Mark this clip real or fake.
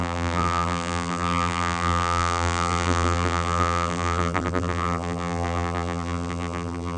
fake